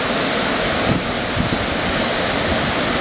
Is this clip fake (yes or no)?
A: no